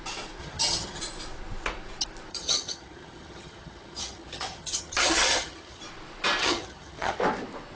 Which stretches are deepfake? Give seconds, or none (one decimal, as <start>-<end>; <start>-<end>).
0.4-1.0; 2.3-5.8; 6.4-7.2